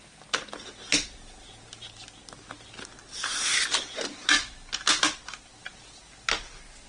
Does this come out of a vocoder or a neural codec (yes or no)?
no